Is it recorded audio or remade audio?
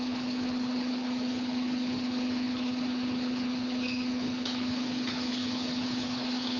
remade